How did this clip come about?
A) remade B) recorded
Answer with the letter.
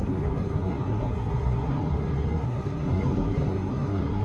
A